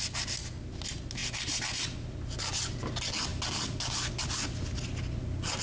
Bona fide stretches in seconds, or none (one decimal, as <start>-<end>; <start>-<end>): 0.0-5.6